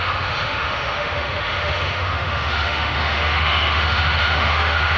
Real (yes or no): no